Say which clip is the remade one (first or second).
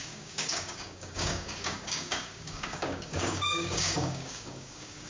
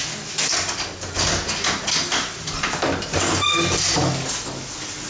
first